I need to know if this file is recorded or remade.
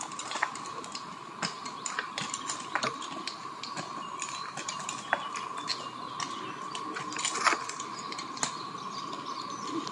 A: recorded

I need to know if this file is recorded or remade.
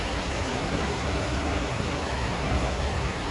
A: remade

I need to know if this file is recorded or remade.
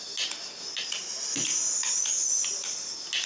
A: recorded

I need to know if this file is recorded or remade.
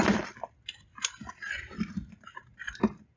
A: recorded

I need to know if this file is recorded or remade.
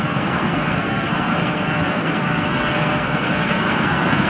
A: remade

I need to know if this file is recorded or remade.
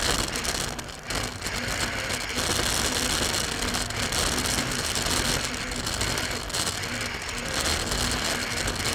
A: recorded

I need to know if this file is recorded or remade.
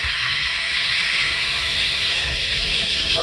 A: remade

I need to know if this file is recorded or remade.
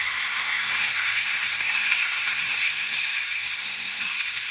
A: remade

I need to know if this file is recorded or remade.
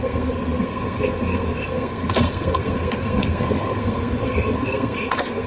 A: remade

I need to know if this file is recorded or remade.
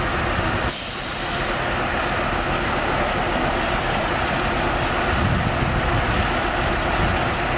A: recorded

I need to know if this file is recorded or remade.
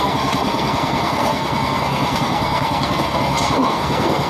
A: remade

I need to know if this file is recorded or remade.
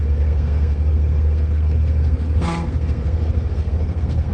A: remade